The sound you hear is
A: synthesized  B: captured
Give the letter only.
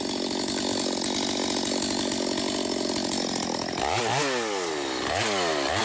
B